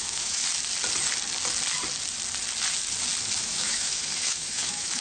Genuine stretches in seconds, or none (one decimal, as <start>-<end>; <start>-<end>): 0.4-3.4